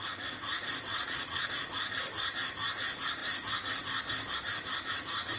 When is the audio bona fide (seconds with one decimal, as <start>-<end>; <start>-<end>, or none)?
0.0-0.9; 1.5-5.4